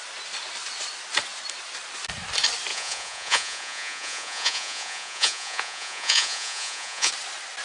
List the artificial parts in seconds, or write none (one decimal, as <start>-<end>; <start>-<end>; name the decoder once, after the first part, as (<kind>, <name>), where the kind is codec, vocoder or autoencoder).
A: 2.7-7.1 (vocoder, Vocos)